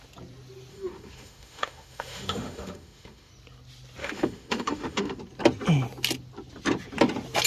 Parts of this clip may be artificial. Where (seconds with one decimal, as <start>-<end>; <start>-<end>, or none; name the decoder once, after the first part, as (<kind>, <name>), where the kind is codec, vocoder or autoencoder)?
0.7-3.3 (autoencoder, DAC-VAE); 4.0-5.2

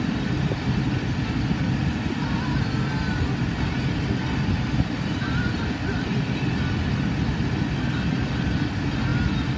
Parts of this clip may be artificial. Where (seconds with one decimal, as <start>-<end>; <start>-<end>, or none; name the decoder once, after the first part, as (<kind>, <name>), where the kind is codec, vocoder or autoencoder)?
none